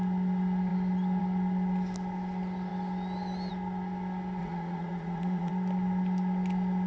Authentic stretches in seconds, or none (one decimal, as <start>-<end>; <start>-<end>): 0.0-4.4; 5.5-6.9